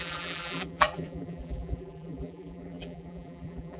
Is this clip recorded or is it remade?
remade